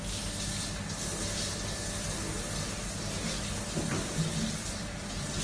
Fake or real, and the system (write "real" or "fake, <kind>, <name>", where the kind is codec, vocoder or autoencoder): real